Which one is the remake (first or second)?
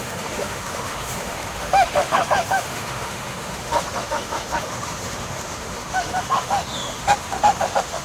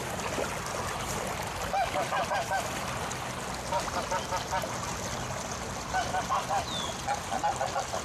first